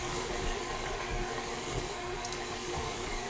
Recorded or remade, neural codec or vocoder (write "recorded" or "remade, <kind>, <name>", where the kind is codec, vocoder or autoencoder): remade, codec, DAC